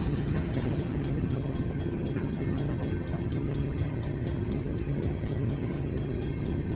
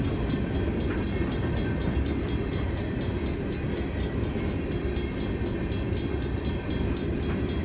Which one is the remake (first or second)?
first